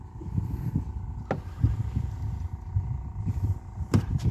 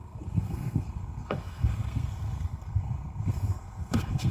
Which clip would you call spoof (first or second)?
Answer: second